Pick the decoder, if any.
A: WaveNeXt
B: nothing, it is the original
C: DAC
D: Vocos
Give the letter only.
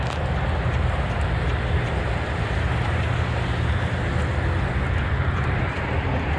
B